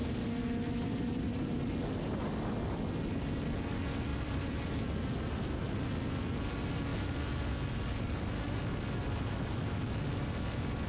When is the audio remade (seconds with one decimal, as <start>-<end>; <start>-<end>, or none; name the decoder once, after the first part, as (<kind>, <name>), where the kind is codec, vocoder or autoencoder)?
4.1-4.7 (vocoder, BigVGAN v2)